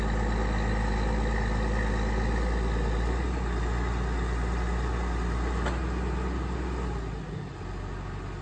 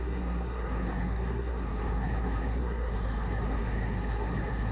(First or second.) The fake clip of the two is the second